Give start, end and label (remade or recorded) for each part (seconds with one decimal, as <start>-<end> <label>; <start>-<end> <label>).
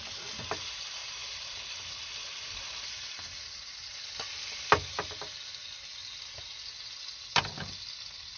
0.0-8.4 recorded